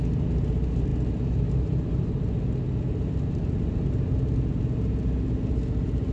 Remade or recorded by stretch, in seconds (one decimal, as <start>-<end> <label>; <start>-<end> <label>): 0.0-6.1 recorded